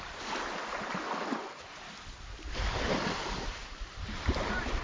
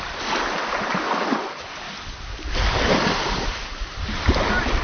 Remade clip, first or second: first